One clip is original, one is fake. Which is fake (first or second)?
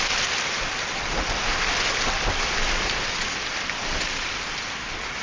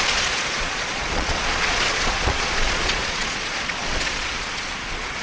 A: second